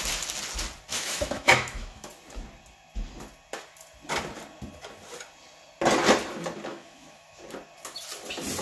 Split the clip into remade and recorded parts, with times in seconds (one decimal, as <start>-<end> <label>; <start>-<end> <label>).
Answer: 0.0-0.9 recorded; 0.9-2.1 remade; 2.1-6.7 recorded; 6.7-7.4 remade; 7.4-8.6 recorded